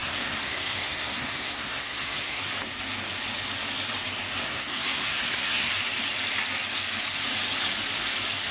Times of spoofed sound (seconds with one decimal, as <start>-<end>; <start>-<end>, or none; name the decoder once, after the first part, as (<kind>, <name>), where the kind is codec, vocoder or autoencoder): 0.0-2.4 (codec, SNAC); 4.4-5.7